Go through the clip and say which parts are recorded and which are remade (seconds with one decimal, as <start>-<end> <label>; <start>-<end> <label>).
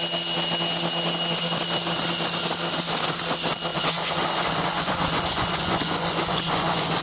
0.0-3.7 recorded; 3.7-7.0 remade